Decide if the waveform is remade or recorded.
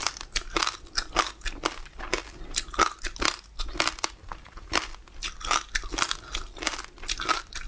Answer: recorded